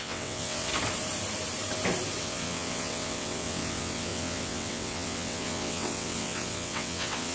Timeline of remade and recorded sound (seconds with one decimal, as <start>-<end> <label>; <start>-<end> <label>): 0.0-0.7 remade; 0.7-2.2 recorded; 2.2-7.3 remade